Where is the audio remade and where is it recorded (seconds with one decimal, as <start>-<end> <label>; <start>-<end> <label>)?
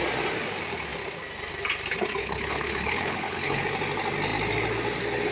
0.0-2.2 recorded; 2.2-3.6 remade; 3.6-5.3 recorded